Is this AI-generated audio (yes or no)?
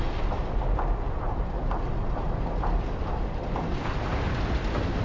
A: no